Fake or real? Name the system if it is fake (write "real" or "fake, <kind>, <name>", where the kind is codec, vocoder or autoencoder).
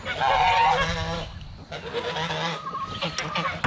real